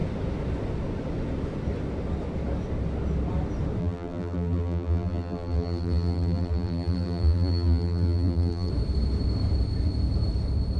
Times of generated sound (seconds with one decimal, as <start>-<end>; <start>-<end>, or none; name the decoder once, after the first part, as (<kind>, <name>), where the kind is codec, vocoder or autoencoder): 3.8-8.7 (vocoder, BigVGAN v2)